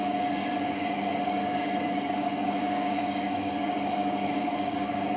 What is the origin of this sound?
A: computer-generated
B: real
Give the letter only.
A